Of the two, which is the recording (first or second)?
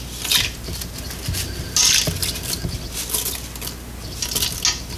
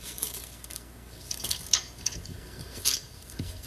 first